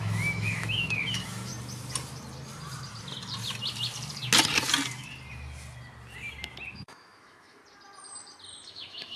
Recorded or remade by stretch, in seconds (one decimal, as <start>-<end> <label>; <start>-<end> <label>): 0.0-1.5 remade; 1.5-6.7 recorded; 6.7-7.6 remade; 7.6-8.7 recorded; 8.7-9.2 remade